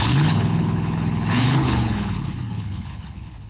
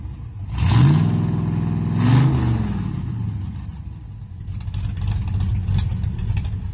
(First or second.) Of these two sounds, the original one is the second